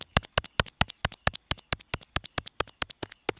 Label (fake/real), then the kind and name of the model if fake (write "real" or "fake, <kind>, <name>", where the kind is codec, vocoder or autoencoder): real